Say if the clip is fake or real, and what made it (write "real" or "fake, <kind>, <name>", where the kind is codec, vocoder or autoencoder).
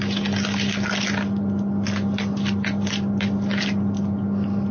real